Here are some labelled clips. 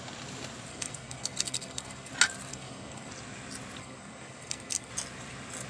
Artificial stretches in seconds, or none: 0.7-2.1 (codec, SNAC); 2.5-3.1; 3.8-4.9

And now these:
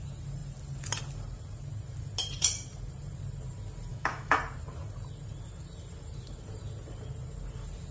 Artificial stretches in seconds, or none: 3.9-4.4 (autoencoder, DAC-VAE)

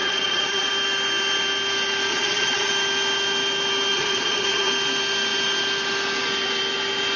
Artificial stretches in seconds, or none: 0.0-0.7 (vocoder, Vocos); 2.1-2.7; 3.9-4.7

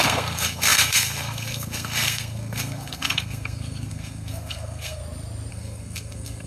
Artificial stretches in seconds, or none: 0.0-5.0 (codec, SNAC); 5.5-6.5